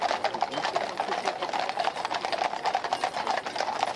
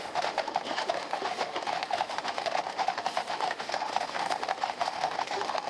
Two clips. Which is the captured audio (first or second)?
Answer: first